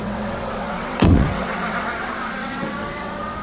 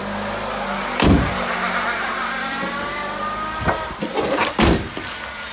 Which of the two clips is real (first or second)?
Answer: second